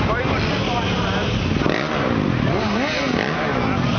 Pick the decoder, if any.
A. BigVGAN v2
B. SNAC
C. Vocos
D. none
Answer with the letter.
D